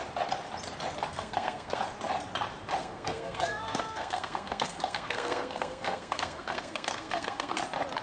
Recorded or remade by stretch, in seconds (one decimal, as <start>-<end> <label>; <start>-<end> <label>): 0.0-1.1 recorded; 1.1-1.8 remade; 1.8-2.8 recorded; 2.8-7.6 remade; 7.6-8.0 recorded